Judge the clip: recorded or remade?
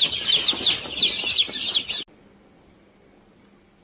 recorded